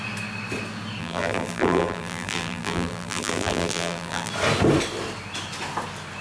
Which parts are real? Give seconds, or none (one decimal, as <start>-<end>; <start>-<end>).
0.0-1.0; 4.3-6.2